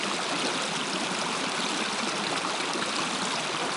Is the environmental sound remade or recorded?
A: recorded